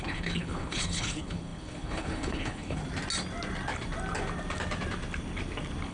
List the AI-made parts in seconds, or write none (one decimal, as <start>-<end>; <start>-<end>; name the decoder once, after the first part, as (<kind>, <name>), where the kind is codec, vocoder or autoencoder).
0.0-2.8 (codec, HILCodec)